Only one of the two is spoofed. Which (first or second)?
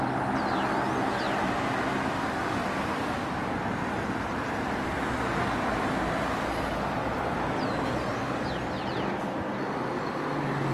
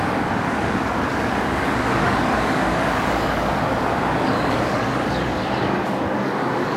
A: second